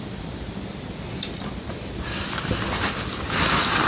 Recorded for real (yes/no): yes